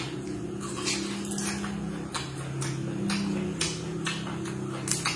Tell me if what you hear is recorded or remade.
recorded